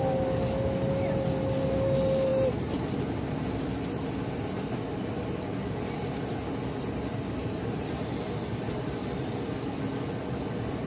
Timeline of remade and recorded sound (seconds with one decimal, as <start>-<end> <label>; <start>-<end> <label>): 0.0-7.4 recorded; 7.4-7.9 remade; 7.9-10.9 recorded